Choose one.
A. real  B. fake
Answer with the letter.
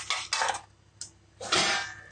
A